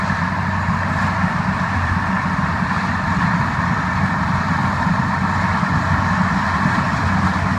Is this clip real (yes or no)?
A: yes